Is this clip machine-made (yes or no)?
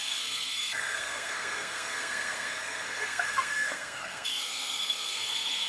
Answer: yes